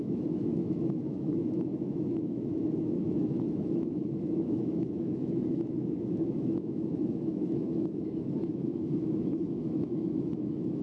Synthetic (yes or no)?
yes